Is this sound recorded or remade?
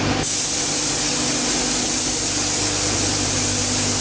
recorded